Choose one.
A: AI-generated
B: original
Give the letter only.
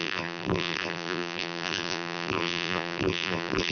A